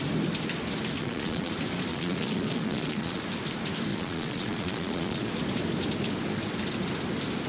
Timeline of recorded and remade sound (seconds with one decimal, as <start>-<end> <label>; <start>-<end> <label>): 0.0-1.0 recorded; 1.0-1.5 remade; 1.5-1.9 recorded; 1.9-3.2 remade; 3.2-3.9 recorded; 3.9-5.3 remade; 5.3-7.5 recorded